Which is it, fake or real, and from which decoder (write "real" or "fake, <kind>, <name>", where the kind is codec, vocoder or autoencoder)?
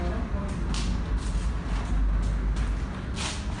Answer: real